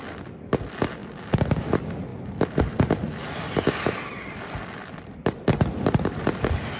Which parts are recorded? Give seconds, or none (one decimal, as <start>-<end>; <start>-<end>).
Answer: 0.0-6.8